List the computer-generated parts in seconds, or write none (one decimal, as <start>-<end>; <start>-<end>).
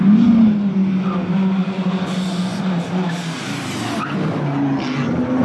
1.6-2.6